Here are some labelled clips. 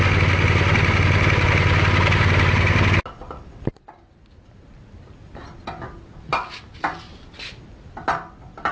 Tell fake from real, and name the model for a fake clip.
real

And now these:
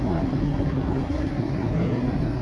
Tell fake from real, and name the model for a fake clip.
fake, codec, SNAC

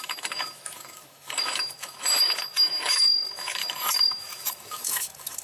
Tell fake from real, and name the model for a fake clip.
fake, autoencoder, DAC-VAE